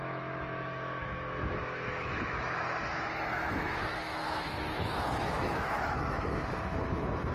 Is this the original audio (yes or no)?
no